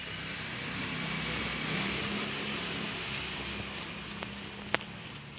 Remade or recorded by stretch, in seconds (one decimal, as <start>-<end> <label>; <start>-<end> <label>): 0.0-5.4 recorded